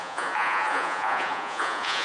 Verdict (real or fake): fake